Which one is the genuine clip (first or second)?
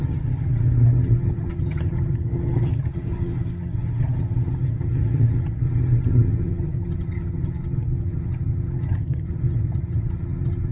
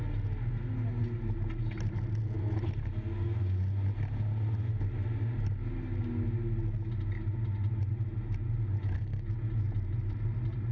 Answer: second